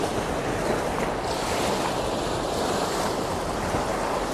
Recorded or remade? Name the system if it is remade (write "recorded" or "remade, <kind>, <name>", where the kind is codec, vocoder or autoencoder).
recorded